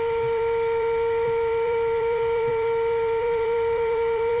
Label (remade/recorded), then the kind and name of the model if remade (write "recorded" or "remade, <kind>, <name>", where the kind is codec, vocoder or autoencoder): remade, vocoder, BigVGAN v2